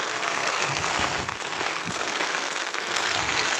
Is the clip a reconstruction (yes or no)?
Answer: yes